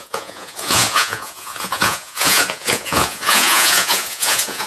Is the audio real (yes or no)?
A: no